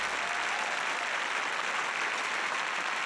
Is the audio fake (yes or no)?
no